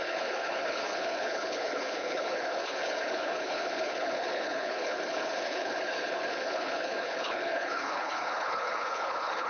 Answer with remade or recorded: remade